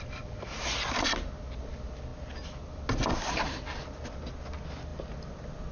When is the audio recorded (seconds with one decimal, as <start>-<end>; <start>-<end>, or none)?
0.0-5.7